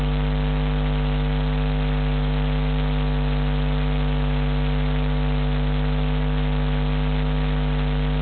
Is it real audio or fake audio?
real